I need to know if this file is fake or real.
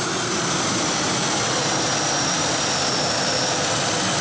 real